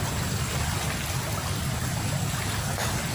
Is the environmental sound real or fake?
real